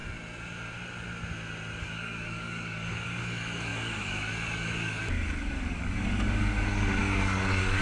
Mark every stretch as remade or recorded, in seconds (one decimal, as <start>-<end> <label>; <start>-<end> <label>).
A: 0.0-1.8 recorded; 1.8-7.8 remade